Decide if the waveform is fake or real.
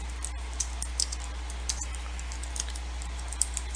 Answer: fake